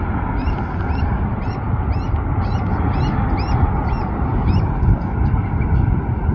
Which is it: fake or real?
real